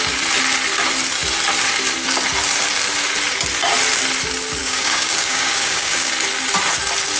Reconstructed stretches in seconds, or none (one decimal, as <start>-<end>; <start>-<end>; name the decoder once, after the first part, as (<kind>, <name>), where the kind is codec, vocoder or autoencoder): 4.6-6.1 (codec, DAC)